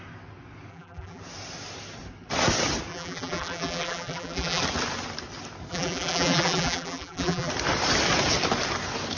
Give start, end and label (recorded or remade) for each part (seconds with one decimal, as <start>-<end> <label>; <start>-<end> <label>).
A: 0.0-0.7 recorded; 0.7-1.2 remade; 1.2-2.9 recorded; 2.9-4.6 remade; 4.6-5.7 recorded; 5.7-7.5 remade; 7.5-9.2 recorded